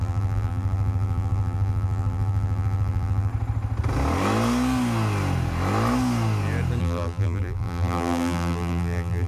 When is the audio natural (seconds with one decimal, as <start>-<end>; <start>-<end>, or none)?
3.3-6.8